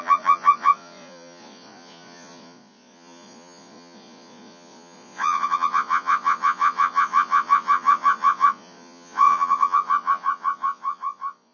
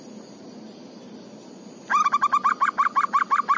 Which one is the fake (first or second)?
first